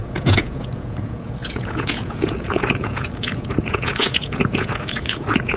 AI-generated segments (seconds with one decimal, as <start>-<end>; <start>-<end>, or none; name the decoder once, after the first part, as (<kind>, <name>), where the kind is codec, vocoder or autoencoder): 0.0-5.6 (vocoder, Vocos)